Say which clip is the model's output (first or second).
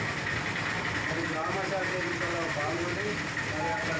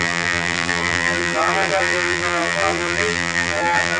second